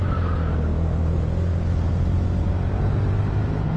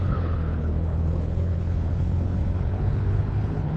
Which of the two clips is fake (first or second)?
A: second